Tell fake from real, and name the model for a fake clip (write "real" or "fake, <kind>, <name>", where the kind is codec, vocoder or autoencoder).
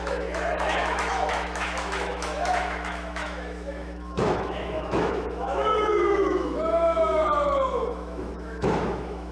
fake, autoencoder, DAC-VAE